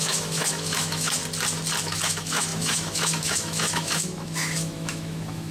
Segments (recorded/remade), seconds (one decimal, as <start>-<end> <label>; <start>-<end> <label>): 0.0-1.2 remade; 1.2-1.8 recorded; 1.8-5.5 remade